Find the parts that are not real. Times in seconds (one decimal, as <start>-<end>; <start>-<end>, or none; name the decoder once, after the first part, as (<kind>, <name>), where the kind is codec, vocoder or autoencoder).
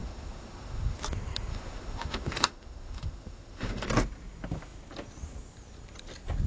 0.0-1.0 (autoencoder, DAC-VAE); 1.5-3.9